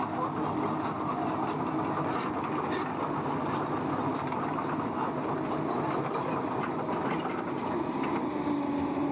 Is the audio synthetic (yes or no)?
no